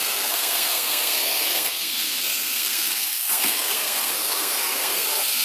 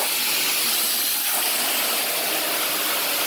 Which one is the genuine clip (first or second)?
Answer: second